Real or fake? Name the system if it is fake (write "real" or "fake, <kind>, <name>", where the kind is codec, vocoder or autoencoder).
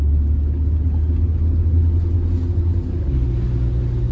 real